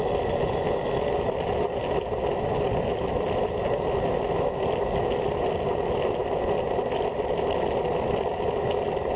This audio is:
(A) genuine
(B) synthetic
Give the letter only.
A